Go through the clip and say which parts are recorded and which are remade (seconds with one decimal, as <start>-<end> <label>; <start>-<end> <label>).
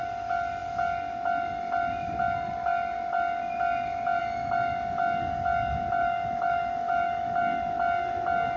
0.0-6.0 recorded; 6.0-7.4 remade; 7.4-8.6 recorded